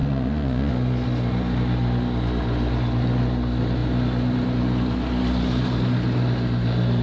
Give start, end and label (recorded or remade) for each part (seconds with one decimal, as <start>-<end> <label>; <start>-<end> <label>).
0.0-0.7 remade; 0.7-7.0 recorded